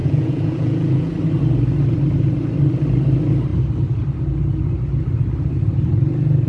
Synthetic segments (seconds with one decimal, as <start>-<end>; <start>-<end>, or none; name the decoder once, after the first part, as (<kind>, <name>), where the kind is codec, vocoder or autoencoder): 0.0-1.1 (vocoder, Vocos)